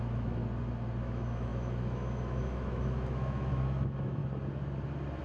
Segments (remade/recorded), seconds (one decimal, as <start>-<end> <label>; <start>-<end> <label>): 0.0-0.4 remade; 0.4-1.0 recorded; 1.0-4.2 remade; 4.2-5.2 recorded